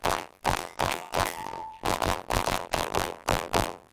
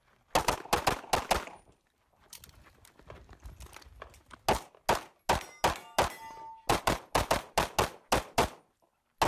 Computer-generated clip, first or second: first